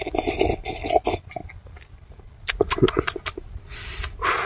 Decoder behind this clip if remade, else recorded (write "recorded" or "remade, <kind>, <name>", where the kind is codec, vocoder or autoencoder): recorded